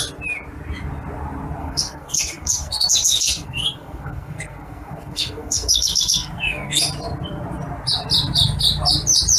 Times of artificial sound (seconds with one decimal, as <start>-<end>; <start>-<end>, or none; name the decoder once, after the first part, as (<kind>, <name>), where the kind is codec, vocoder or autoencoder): 1.6-6.8 (codec, SNAC)